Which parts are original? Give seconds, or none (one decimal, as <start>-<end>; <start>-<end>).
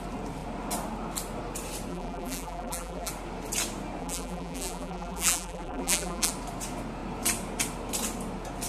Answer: 0.0-1.9; 3.1-4.0; 6.3-8.7